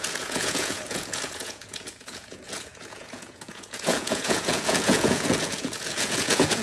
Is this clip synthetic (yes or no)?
yes